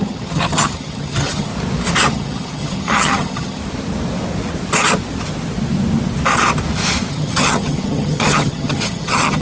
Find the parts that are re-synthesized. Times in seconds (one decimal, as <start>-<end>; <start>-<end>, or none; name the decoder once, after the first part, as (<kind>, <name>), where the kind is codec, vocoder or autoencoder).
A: 0.0-1.5 (vocoder, HiFi-GAN); 2.1-3.6; 7.1-9.4